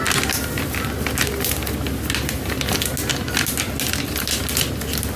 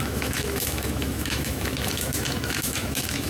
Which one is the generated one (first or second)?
second